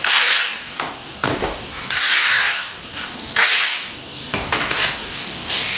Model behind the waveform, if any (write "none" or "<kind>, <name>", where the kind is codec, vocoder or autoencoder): codec, DAC